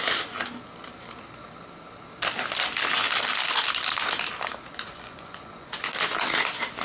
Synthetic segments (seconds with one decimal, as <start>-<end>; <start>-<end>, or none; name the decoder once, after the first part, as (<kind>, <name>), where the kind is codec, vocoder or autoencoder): 4.9-5.9 (vocoder, Vocos)